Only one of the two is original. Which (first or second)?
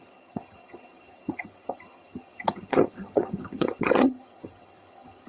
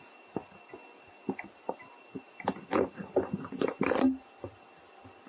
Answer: second